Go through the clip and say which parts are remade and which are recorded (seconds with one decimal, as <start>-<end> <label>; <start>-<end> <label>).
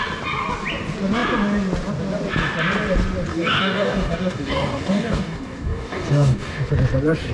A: 0.0-3.3 recorded; 3.3-6.7 remade; 6.7-7.3 recorded